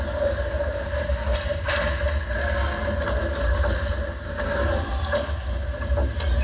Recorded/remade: recorded